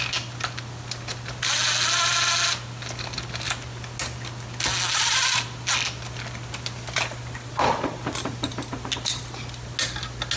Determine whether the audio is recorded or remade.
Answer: recorded